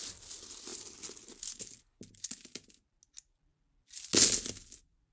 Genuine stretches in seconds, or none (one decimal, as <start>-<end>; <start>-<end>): 0.0-5.1